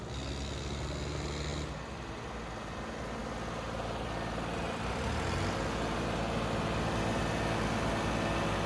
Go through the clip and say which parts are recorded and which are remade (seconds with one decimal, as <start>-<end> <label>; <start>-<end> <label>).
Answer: 0.0-8.7 recorded